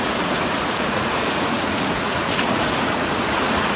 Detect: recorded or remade remade